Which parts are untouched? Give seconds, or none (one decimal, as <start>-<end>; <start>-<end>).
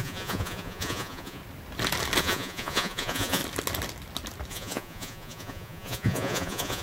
1.4-2.2; 3.4-4.5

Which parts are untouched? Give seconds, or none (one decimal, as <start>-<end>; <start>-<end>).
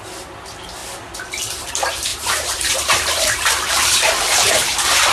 0.0-2.1; 4.2-5.1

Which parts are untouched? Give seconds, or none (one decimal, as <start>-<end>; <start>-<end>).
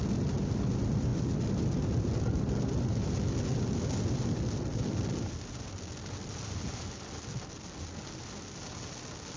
0.0-9.4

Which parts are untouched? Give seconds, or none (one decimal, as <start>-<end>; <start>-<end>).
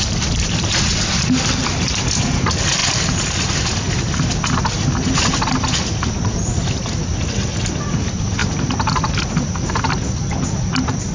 0.0-11.1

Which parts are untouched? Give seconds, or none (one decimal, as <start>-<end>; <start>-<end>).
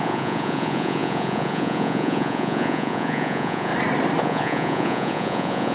3.7-4.2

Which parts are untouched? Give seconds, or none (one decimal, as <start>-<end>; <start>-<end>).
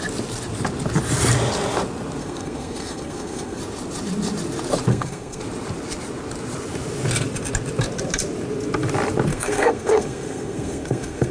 0.0-2.2; 3.6-4.9; 5.4-9.3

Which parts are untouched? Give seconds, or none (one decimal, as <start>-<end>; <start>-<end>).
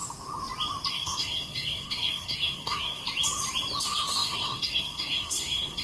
0.0-0.9; 3.0-3.8